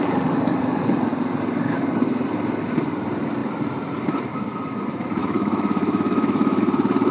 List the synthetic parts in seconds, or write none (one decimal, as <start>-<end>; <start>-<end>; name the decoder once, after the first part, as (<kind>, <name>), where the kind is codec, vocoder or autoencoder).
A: 5.2-6.6 (autoencoder, DAC-VAE)